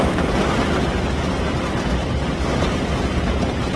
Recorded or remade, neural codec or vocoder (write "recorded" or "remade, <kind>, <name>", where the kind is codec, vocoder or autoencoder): recorded